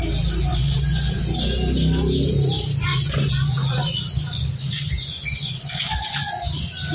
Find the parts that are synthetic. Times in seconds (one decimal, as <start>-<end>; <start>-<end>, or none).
0.5-1.2; 2.9-6.4